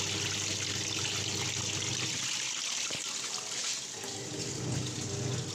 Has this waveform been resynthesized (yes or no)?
no